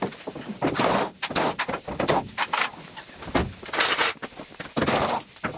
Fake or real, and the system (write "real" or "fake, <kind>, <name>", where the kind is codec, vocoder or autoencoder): real